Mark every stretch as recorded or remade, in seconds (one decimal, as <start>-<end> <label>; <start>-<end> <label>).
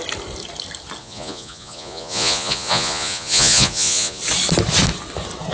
0.0-1.0 recorded; 1.0-4.2 remade; 4.2-5.5 recorded